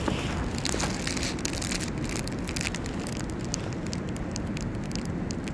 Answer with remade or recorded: recorded